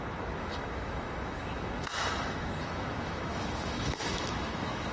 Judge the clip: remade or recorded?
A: remade